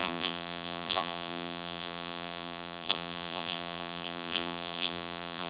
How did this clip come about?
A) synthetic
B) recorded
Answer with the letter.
A